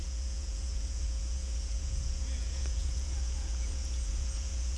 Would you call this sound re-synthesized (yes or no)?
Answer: yes